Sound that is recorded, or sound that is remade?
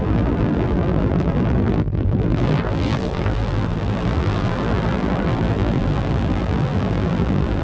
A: remade